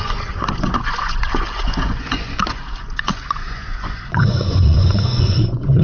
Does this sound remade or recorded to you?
remade